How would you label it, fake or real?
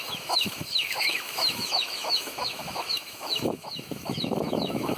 fake